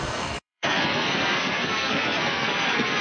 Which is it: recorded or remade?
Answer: remade